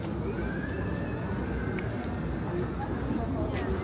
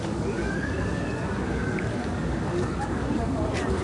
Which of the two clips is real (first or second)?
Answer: first